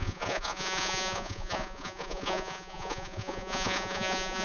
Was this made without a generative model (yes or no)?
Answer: no